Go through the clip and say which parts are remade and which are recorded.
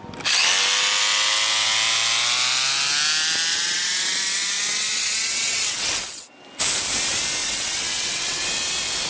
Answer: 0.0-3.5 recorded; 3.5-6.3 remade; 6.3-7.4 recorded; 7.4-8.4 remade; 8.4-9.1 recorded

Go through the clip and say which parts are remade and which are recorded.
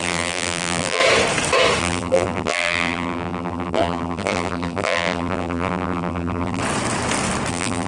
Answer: 0.0-1.0 remade; 1.0-1.8 recorded; 1.8-6.6 remade; 6.6-7.5 recorded; 7.5-7.9 remade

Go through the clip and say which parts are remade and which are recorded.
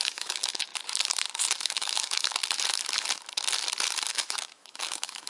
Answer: 0.0-0.7 remade; 0.7-1.6 recorded; 1.6-2.4 remade; 2.4-4.1 recorded; 4.1-5.3 remade